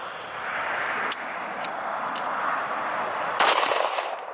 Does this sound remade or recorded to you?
recorded